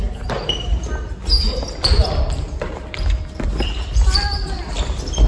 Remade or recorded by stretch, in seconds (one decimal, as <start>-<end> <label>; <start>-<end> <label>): 0.0-5.3 recorded